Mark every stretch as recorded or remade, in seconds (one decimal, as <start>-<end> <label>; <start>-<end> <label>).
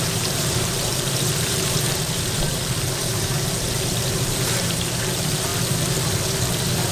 0.0-5.5 remade; 5.5-6.9 recorded